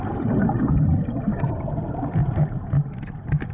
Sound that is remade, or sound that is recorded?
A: recorded